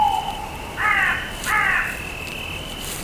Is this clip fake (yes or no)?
no